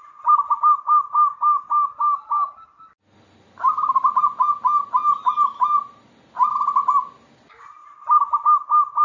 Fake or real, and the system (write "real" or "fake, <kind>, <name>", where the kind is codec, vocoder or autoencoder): real